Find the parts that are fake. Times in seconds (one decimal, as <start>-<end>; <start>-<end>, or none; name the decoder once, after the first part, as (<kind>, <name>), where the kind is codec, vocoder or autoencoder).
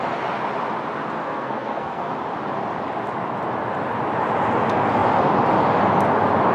1.2-2.1 (codec, SNAC)